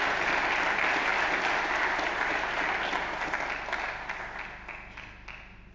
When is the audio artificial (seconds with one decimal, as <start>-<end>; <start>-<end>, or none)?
none